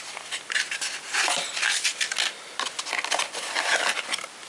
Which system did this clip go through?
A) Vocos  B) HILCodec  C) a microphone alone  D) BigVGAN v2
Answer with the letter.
C